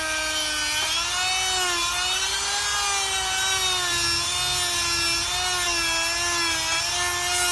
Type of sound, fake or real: real